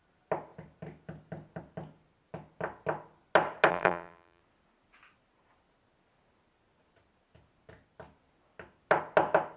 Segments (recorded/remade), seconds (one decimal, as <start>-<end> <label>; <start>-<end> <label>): 0.0-3.7 recorded; 3.7-4.4 remade; 4.4-9.6 recorded